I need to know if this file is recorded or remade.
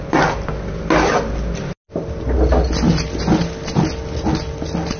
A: recorded